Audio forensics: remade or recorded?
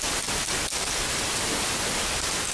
recorded